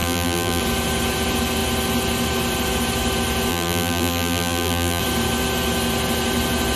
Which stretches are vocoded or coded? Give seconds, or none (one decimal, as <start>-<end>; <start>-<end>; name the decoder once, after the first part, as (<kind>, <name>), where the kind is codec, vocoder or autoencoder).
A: 0.0-0.6 (vocoder, BigVGAN v2); 3.5-5.0